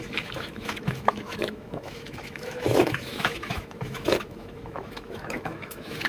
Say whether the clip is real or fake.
fake